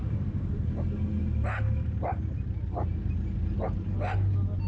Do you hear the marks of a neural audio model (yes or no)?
no